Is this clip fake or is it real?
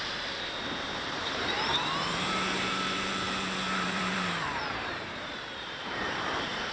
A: fake